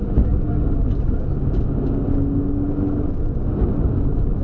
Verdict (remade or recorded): recorded